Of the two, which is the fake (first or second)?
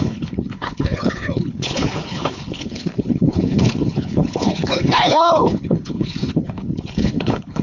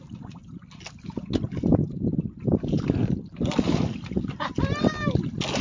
first